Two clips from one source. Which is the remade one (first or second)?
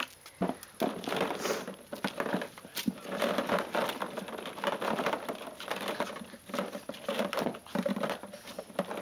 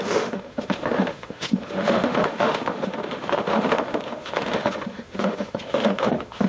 second